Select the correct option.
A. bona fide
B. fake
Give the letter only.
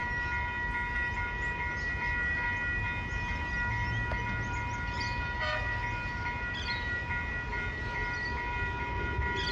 A